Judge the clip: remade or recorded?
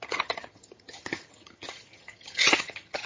remade